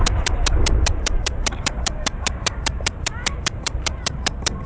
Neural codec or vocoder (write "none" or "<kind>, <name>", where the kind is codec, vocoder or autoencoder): vocoder, BigVGAN v2